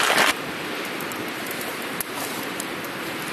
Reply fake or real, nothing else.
real